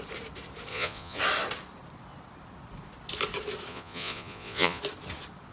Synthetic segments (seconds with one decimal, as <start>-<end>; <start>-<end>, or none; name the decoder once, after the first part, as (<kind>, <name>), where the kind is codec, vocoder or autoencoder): 0.7-1.2 (vocoder, Vocos); 3.7-4.8

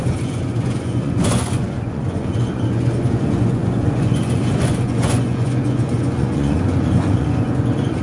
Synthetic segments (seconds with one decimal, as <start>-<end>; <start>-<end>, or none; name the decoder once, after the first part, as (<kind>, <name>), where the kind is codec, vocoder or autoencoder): 0.0-8.0 (vocoder, Vocos)